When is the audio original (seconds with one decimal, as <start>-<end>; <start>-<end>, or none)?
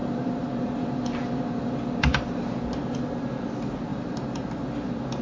2.6-3.9; 4.5-5.2